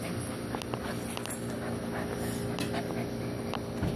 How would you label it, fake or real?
real